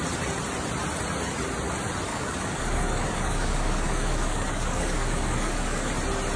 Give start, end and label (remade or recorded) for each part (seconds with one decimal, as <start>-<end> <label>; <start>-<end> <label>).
0.0-2.1 recorded; 2.1-5.9 remade; 5.9-6.4 recorded